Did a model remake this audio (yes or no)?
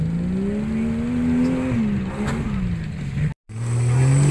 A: no